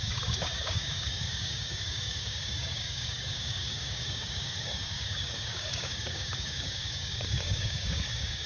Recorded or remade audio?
remade